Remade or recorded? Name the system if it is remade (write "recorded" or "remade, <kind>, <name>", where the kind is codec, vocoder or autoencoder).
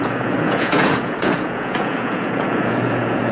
remade, vocoder, Vocos